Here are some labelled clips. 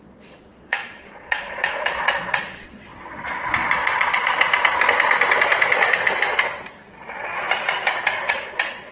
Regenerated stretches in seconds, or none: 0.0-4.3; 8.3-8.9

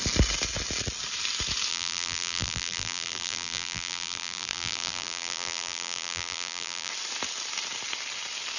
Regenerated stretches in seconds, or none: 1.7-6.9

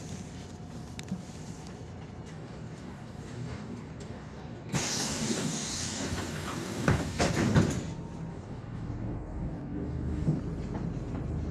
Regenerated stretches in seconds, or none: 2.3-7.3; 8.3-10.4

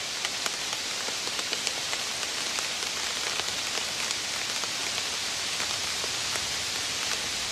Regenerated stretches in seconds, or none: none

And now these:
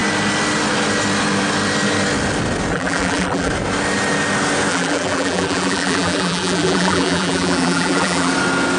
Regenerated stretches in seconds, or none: 2.7-3.5; 4.7-8.3